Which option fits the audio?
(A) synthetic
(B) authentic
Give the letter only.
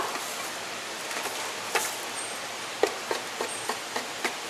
A